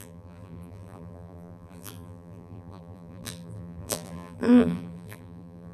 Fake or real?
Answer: fake